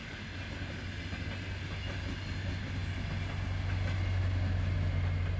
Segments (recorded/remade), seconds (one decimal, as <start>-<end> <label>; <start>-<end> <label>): 0.0-5.4 recorded